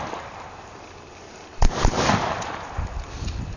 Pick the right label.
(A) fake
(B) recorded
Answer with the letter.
B